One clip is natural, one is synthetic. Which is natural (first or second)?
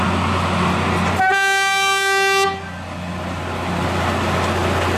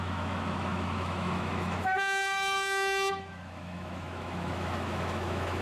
first